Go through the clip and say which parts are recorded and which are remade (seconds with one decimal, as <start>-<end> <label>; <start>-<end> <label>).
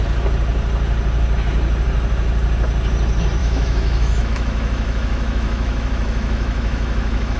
0.0-3.4 recorded; 3.4-7.4 remade